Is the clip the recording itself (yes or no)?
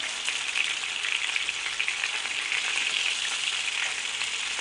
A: yes